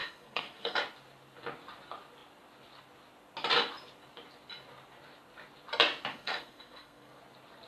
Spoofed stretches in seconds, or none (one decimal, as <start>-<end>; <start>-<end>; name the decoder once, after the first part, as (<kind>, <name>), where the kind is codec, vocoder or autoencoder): 0.0-0.8 (codec, SNAC); 6.1-7.2